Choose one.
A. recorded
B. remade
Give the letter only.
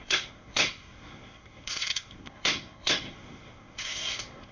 B